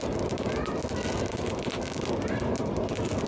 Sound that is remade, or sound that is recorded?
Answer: recorded